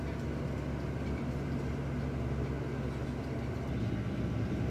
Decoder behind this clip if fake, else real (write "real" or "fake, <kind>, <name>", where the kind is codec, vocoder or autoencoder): real